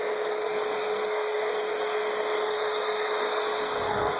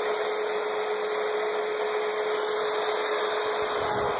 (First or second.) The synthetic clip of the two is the first